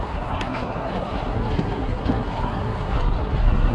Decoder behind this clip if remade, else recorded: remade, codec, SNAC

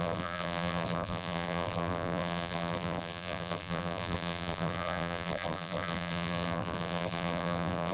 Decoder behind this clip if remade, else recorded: remade, vocoder, BigVGAN v2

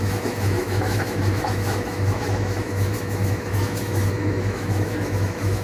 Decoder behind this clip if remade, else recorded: remade, autoencoder, DAC-VAE